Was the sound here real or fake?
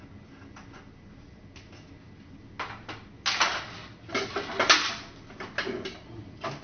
real